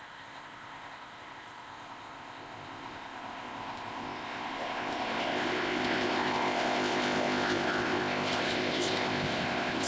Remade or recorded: remade